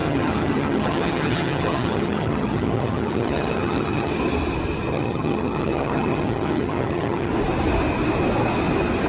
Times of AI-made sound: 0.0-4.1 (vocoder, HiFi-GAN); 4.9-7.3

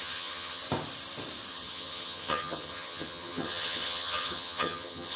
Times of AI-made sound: 0.0-0.6 (vocoder, HiFi-GAN); 1.5-5.2

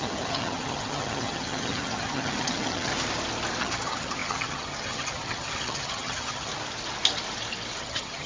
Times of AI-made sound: 0.0-2.9 (vocoder, HiFi-GAN); 3.6-6.5; 7.8-8.3

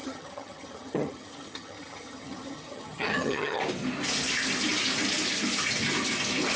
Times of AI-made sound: 0.0-3.6 (vocoder, HiFi-GAN)

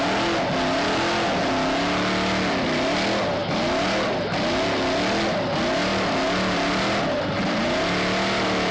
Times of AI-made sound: none

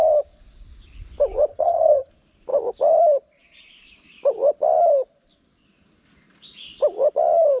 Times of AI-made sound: 1.5-2.1 (vocoder, HiFi-GAN)

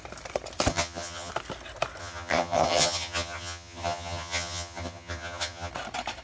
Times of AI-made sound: 0.7-1.3 (vocoder, HiFi-GAN); 2.0-5.7

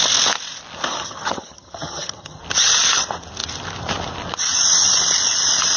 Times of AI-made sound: 0.9-2.4 (vocoder, HiFi-GAN)